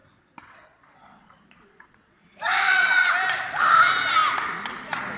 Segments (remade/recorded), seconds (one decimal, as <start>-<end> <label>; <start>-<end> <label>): 0.0-3.1 remade; 3.1-5.2 recorded